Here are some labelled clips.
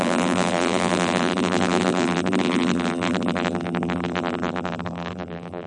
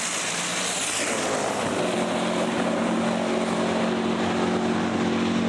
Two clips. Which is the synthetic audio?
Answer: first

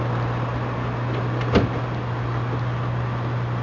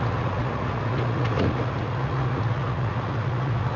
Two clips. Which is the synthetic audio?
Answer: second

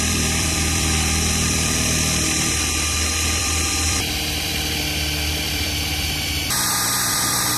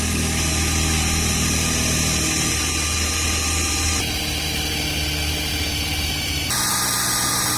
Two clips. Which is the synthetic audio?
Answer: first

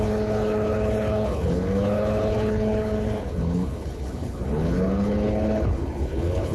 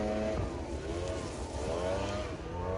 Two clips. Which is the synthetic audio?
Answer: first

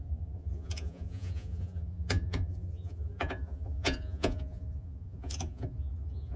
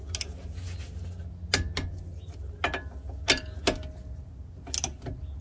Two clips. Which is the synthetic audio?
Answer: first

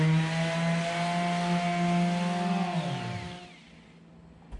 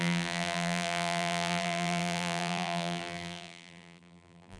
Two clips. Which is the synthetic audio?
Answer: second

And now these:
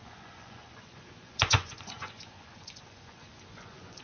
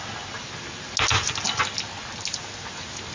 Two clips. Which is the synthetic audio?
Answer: first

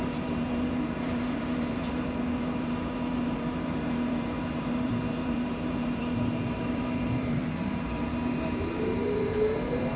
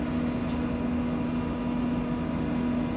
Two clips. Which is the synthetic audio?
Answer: first